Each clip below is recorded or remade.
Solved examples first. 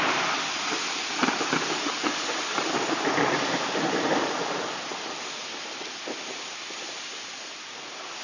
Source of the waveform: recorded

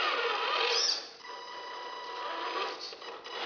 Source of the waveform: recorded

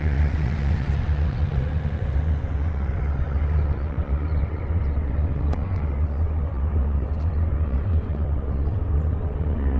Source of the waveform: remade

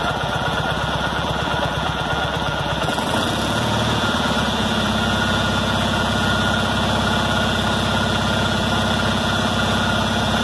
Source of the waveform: remade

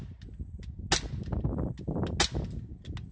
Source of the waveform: recorded